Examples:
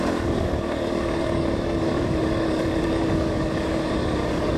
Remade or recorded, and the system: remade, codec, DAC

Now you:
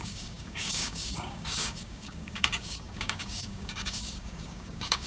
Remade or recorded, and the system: remade, codec, DAC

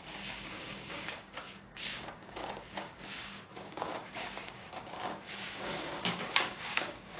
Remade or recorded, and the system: remade, codec, DAC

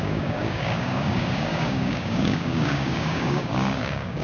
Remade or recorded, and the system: remade, codec, DAC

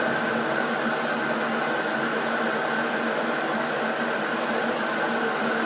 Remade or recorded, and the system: recorded